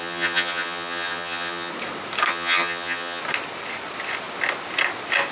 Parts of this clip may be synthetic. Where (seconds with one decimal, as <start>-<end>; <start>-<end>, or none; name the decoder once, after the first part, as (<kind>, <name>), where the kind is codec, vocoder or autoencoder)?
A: 0.0-1.7 (vocoder, HiFi-GAN); 2.3-3.2